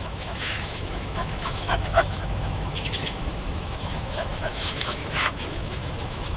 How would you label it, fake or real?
fake